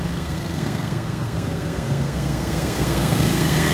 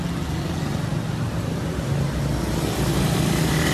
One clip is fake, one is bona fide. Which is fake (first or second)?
first